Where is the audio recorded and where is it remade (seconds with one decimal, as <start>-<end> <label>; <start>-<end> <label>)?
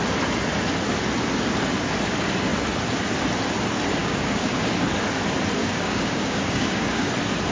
0.0-4.0 recorded; 4.0-4.7 remade; 4.7-5.6 recorded; 5.6-7.1 remade; 7.1-7.5 recorded